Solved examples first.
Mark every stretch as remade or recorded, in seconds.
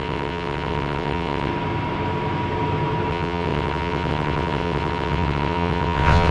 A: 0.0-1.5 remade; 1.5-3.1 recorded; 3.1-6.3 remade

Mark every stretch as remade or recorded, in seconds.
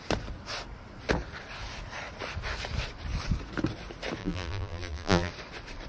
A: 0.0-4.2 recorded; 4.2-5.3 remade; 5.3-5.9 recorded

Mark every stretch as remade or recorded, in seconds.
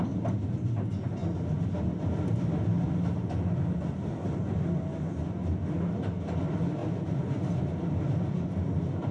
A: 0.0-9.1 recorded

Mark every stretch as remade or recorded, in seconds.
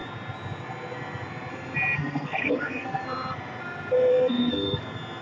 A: 0.0-2.0 recorded; 2.0-3.0 remade; 3.0-4.1 recorded; 4.1-4.8 remade; 4.8-5.2 recorded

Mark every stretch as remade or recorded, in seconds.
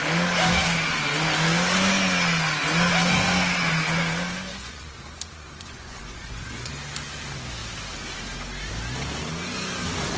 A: 0.0-4.5 recorded; 4.5-6.7 remade; 6.7-10.2 recorded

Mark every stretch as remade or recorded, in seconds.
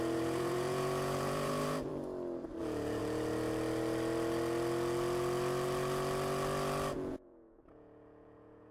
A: 0.0-1.9 remade; 1.9-2.6 recorded; 2.6-3.0 remade; 3.0-6.9 recorded; 6.9-8.7 remade